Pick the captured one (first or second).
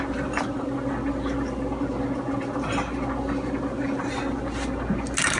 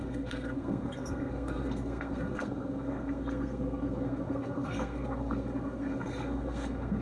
first